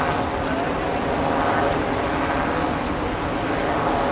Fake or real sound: real